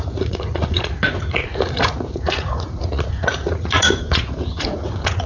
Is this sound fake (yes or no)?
yes